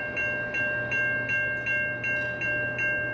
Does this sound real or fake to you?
real